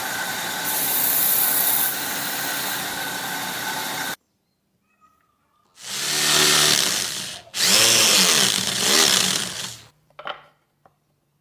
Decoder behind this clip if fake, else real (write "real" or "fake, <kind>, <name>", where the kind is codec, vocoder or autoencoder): real